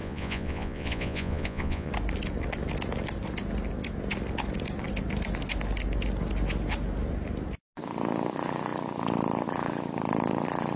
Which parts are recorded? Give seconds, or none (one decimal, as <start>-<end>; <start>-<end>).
1.9-10.8